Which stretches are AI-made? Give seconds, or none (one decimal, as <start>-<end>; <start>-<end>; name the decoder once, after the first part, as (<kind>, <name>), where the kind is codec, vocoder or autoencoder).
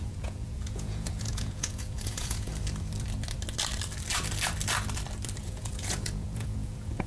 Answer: 0.0-2.5 (vocoder, Vocos); 5.4-7.1